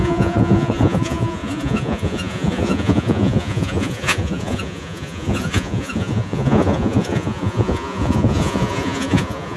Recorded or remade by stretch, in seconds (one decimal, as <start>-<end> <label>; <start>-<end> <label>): 0.0-9.6 remade